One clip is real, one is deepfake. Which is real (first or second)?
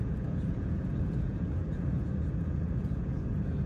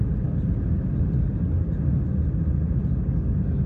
second